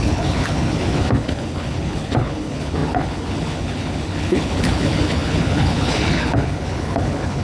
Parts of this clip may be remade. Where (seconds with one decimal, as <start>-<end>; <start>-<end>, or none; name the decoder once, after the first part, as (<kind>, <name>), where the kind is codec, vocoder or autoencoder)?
0.0-7.4 (codec, HILCodec)